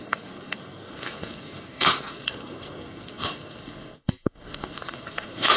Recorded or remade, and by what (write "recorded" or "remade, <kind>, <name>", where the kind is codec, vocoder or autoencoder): remade, codec, SNAC